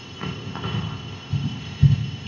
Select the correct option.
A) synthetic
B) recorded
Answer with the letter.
A